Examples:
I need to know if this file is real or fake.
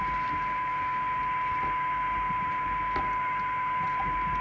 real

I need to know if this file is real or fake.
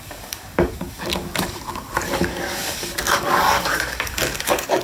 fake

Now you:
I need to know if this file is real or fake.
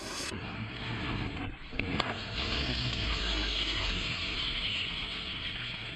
fake